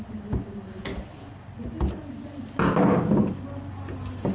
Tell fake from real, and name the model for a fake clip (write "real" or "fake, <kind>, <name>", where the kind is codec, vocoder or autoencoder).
real